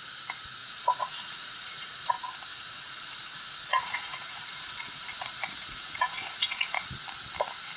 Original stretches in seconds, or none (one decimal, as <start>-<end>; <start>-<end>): 0.0-0.6; 2.1-2.5; 6.9-7.8